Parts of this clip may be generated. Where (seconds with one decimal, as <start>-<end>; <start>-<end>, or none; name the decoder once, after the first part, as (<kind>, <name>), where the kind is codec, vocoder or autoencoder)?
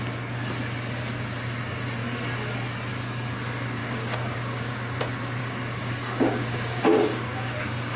3.8-5.0 (codec, DAC); 5.4-8.0